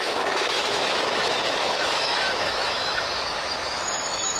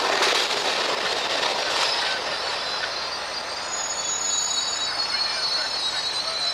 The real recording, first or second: second